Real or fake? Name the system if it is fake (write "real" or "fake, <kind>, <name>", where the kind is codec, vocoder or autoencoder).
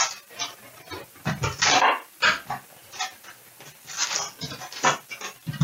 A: real